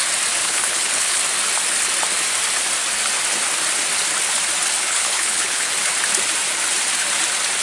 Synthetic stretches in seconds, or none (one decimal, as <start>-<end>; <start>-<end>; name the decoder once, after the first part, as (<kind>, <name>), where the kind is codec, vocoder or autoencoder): 0.4-1.2 (codec, HILCodec); 4.8-5.7

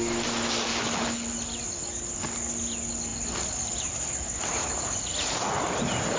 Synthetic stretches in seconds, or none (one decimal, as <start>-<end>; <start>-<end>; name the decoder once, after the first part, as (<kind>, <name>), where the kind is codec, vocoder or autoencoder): 0.7-1.3 (codec, HILCodec)